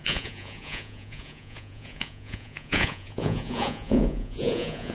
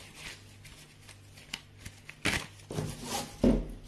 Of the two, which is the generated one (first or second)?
first